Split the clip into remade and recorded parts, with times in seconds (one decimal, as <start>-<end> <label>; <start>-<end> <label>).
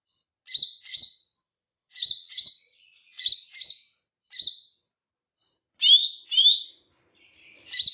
0.0-0.9 recorded; 0.9-3.3 remade; 3.3-7.9 recorded